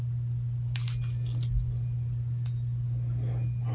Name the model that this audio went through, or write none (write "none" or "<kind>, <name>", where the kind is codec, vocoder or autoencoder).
none